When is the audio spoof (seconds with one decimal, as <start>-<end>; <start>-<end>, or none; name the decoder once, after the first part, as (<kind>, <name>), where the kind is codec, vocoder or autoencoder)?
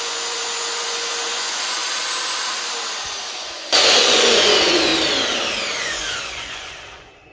0.0-1.8 (vocoder, Vocos); 3.4-4.9; 5.8-7.3